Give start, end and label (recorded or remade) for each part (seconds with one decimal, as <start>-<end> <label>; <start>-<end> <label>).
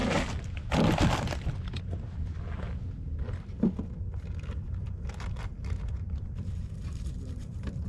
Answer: 0.0-5.6 recorded; 5.6-7.9 remade